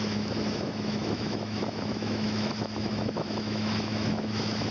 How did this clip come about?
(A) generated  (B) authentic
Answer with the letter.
A